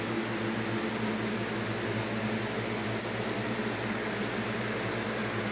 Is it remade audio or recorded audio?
recorded